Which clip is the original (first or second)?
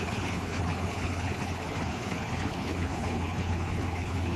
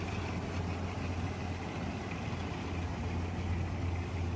second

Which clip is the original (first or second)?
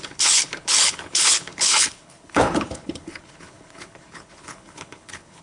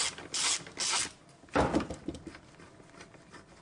second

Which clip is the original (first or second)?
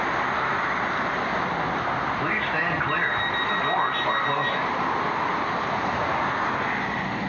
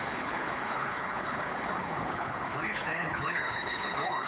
first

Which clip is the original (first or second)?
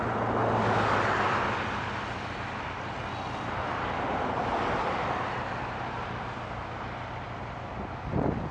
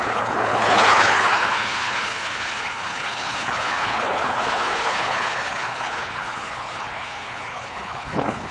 first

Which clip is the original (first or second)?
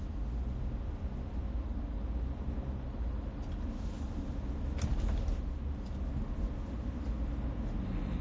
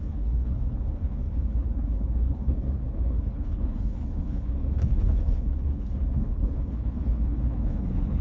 first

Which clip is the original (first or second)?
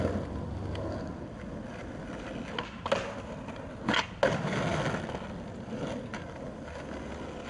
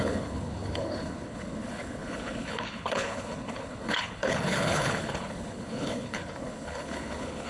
first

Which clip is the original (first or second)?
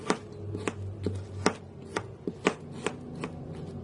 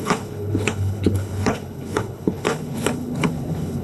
first